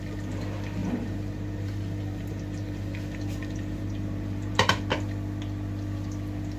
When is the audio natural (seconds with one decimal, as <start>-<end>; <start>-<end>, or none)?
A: 0.0-0.8; 4.8-6.6